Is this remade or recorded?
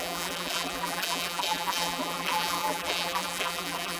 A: remade